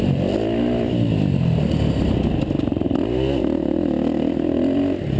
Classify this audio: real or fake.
real